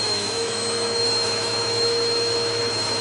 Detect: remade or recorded remade